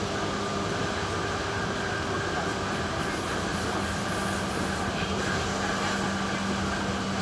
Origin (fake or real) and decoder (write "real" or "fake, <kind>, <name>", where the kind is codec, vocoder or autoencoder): real